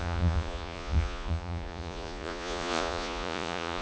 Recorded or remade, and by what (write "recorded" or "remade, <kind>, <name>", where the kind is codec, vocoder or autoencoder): remade, vocoder, Vocos